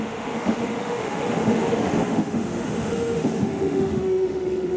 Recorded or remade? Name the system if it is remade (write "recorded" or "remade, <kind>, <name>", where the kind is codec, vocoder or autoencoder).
remade, autoencoder, DAC-VAE